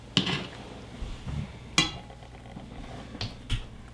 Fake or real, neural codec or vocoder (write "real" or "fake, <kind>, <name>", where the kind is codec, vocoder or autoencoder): real